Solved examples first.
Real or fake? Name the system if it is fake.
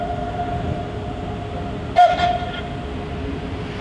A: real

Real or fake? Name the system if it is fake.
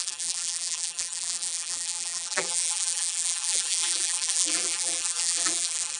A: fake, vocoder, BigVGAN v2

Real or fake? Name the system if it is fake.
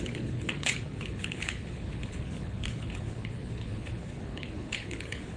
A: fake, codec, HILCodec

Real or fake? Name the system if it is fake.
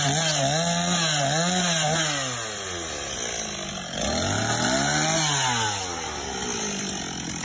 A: real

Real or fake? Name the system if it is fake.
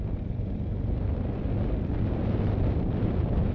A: real